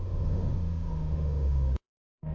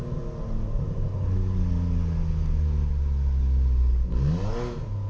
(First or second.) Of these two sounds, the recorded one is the second